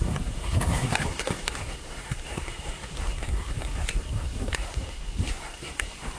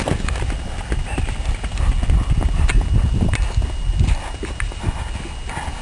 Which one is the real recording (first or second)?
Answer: second